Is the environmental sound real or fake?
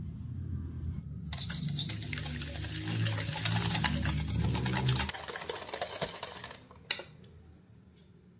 real